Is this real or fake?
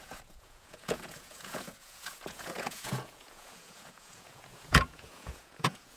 fake